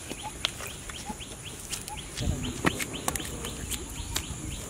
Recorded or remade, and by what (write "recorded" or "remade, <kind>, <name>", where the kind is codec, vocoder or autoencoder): recorded